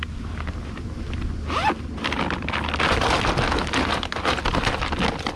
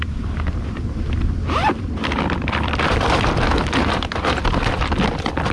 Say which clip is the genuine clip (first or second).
first